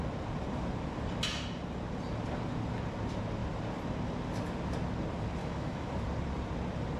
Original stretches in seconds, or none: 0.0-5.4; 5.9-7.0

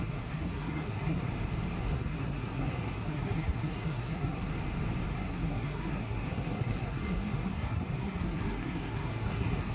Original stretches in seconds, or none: 1.3-1.8; 4.5-5.1

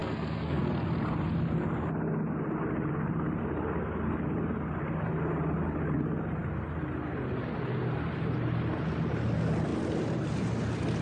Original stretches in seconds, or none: 0.6-11.0

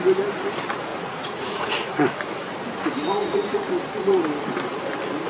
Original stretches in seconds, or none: 0.0-0.9; 1.9-3.2; 3.7-5.3